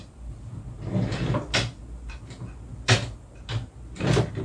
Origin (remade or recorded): recorded